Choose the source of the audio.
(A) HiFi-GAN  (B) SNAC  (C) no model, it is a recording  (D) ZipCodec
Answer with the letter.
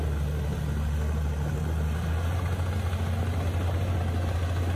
C